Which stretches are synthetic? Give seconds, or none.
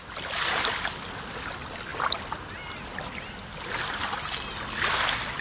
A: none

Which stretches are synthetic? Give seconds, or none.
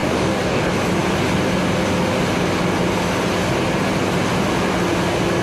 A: 0.0-0.6 (codec, DAC)